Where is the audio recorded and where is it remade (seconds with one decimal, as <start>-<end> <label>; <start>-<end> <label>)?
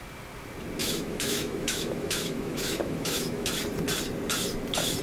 0.0-0.8 recorded; 0.8-3.5 remade; 3.5-5.0 recorded